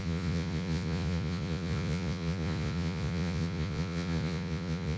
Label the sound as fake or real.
fake